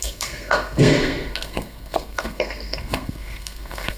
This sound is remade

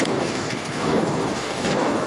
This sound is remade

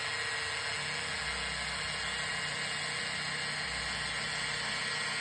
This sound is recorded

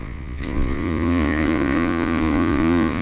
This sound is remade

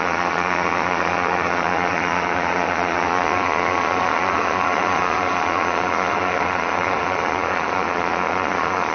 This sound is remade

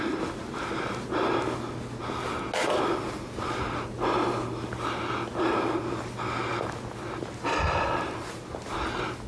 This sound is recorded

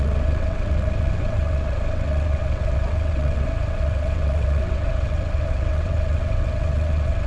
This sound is remade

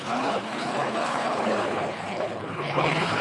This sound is remade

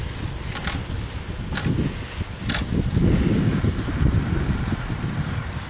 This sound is recorded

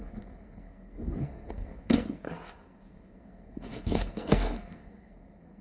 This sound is remade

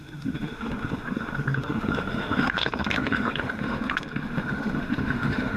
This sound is remade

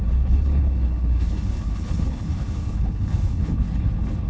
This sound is remade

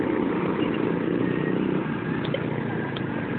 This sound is recorded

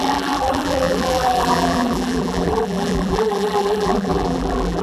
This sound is remade